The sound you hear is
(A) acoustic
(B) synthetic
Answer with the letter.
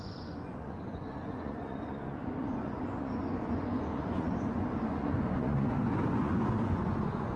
B